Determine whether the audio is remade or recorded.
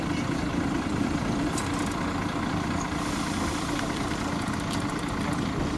remade